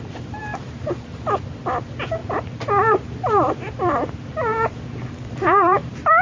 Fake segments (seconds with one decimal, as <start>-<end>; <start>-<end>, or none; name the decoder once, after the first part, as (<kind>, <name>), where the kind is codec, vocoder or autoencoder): 0.5-1.2 (vocoder, BigVGAN v2); 2.2-6.2